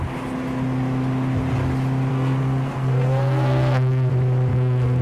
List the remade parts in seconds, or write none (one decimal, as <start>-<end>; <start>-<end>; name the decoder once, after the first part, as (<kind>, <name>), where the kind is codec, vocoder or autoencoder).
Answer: 2.1-4.1 (codec, SNAC); 4.5-5.0